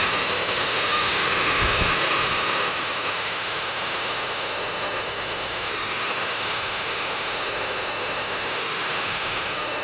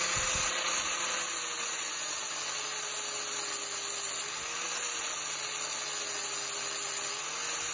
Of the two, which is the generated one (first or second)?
first